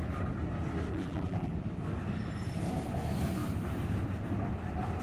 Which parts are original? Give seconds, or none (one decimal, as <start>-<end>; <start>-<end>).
0.0-0.9; 1.5-5.0